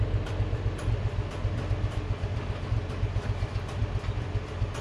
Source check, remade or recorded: recorded